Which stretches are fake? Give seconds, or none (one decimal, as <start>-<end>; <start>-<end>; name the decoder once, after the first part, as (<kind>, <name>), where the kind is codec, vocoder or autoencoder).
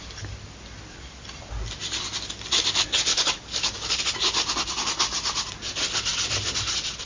3.1-4.0 (codec, DAC)